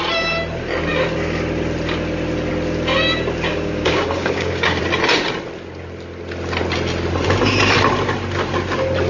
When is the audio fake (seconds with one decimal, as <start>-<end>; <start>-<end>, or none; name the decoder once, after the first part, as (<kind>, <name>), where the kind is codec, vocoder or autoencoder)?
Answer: 3.5-4.8 (codec, DAC)